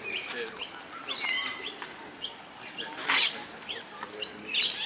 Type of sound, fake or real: real